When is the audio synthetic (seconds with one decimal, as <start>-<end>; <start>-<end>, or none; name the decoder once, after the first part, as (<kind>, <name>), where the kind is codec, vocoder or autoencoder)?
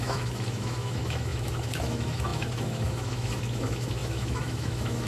0.0-5.1 (autoencoder, DAC-VAE)